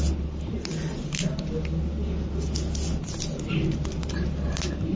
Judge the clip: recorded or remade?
recorded